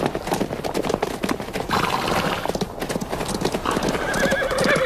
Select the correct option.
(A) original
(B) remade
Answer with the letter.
A